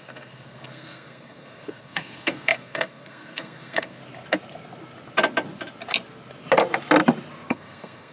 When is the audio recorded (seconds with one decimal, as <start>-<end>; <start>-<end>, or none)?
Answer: 4.0-7.5